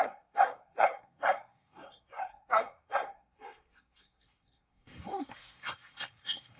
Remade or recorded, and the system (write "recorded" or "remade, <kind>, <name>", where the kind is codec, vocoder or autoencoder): remade, codec, SNAC